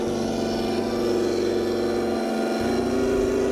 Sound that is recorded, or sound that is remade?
recorded